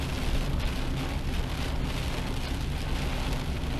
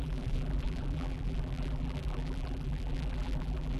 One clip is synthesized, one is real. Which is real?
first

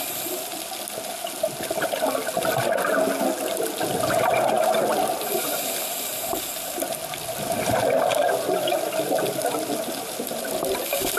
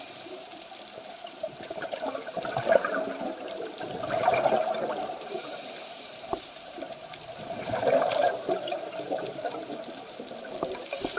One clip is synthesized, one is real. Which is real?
first